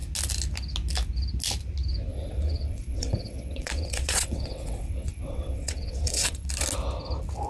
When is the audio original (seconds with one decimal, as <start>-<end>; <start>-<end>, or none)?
0.0-2.1; 6.5-7.5

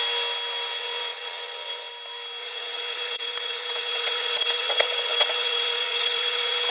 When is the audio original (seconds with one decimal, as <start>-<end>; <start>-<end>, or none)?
0.0-0.7; 1.9-2.4

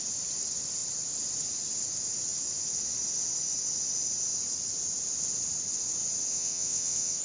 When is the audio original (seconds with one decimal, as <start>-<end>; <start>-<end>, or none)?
0.0-6.3

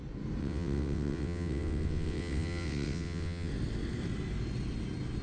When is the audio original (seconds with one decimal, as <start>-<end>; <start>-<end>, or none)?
0.0-0.4; 3.5-5.2

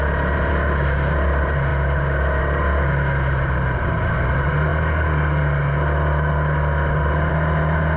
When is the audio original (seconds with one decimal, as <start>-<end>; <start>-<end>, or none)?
0.0-8.0